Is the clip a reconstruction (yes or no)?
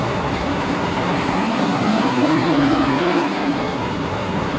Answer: yes